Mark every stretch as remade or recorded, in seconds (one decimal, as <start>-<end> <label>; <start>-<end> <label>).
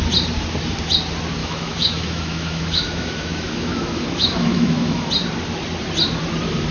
0.0-1.4 recorded; 1.4-5.1 remade; 5.1-6.7 recorded